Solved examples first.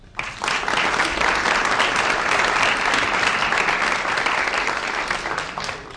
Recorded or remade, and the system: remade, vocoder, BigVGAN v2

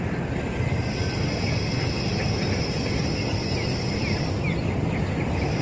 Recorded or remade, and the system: recorded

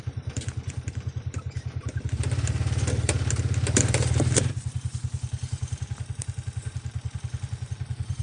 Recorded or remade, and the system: remade, vocoder, BigVGAN v2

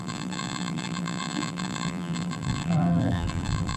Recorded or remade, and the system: remade, vocoder, BigVGAN v2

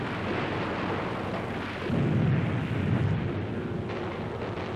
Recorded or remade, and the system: recorded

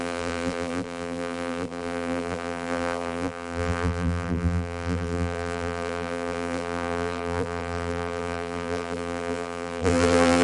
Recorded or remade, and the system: remade, vocoder, BigVGAN v2